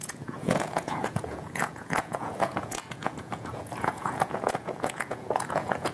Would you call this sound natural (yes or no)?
no